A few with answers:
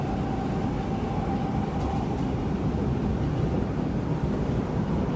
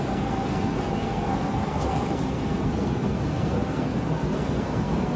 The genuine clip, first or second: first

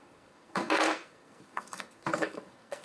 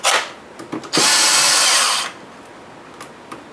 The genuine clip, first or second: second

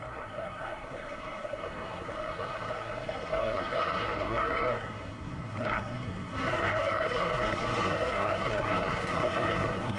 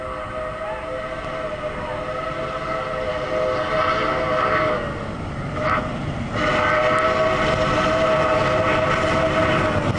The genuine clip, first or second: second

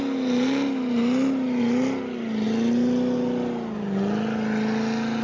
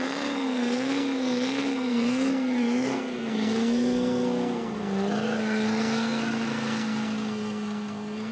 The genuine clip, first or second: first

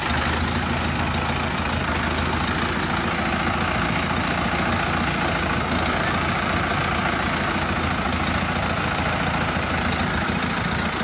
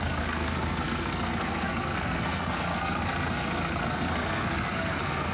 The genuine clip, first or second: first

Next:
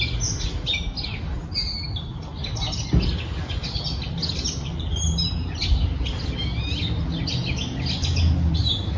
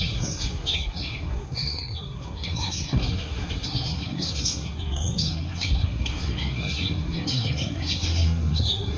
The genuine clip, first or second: first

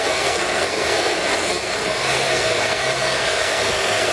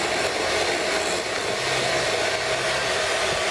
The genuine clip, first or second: second